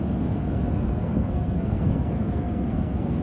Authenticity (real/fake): fake